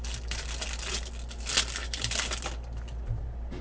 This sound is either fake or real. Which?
real